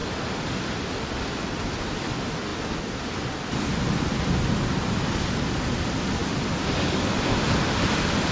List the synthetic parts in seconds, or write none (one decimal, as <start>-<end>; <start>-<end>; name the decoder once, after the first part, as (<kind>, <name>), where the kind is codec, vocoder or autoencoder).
none